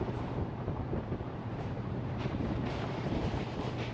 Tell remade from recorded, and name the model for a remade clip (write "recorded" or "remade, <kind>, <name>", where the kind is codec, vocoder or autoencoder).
remade, vocoder, BigVGAN v2